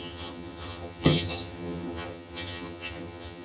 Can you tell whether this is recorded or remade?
remade